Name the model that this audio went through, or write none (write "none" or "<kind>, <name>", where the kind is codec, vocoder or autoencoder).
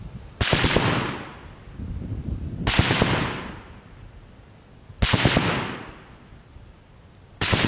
none